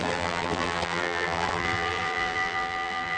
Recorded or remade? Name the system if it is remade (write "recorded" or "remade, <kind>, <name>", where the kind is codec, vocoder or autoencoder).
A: remade, vocoder, BigVGAN v2